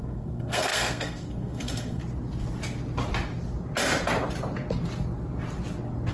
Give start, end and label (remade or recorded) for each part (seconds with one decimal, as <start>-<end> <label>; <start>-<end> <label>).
0.0-2.0 remade; 2.0-6.1 recorded